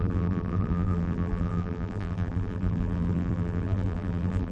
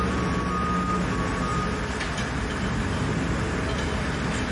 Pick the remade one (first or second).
first